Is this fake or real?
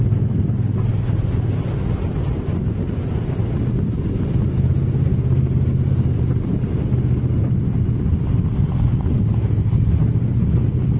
real